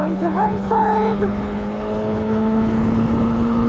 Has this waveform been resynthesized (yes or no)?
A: yes